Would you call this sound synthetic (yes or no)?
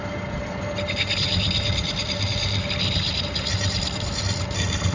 no